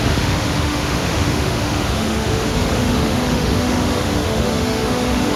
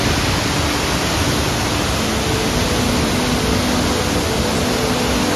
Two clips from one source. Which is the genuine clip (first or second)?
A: second